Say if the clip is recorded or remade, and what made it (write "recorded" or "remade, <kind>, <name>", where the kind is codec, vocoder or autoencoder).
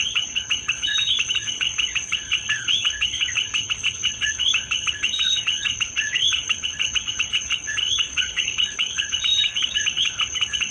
remade, codec, HILCodec